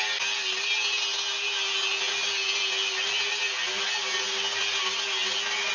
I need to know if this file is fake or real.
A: real